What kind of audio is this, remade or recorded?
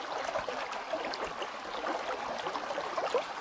recorded